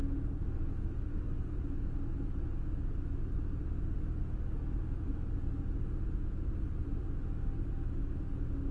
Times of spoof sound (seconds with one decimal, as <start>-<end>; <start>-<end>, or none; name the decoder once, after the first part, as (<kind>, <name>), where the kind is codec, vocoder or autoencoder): none